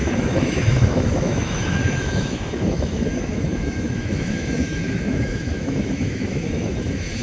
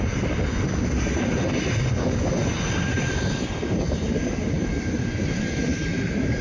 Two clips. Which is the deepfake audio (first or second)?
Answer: first